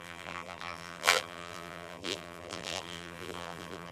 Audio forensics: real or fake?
fake